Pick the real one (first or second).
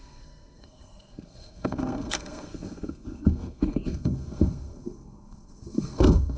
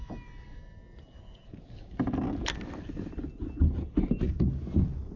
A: second